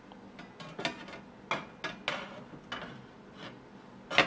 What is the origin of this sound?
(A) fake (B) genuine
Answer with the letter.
B